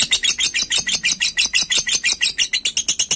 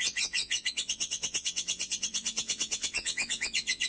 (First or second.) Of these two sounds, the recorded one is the first